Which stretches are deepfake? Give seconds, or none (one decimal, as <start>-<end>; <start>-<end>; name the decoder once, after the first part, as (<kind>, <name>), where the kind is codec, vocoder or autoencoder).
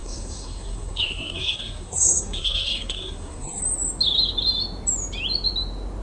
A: 0.0-3.6 (codec, SNAC)